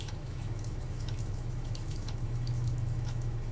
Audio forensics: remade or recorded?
remade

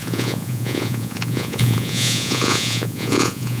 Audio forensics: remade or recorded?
remade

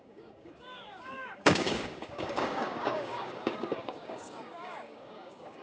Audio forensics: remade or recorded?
remade